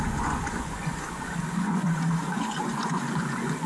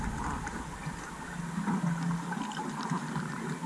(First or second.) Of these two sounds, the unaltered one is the second